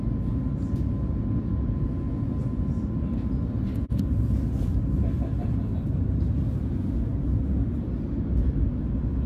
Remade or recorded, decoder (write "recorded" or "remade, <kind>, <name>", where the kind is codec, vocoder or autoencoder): recorded